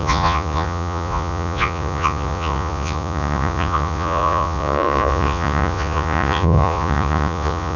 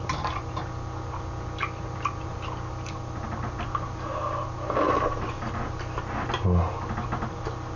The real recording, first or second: second